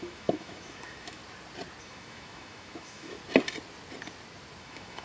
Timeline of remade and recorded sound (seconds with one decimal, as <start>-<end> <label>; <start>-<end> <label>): 0.0-1.2 remade; 1.2-1.8 recorded; 1.8-3.2 remade; 3.2-4.6 recorded; 4.6-5.0 remade